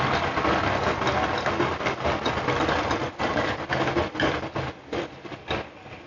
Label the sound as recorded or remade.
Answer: recorded